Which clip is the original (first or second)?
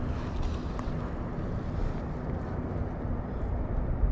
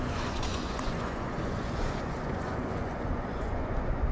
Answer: first